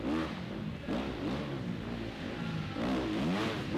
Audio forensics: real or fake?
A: real